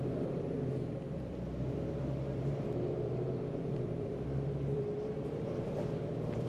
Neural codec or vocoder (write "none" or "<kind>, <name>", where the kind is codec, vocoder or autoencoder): vocoder, BigVGAN v2